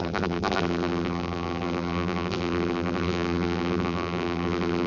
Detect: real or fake fake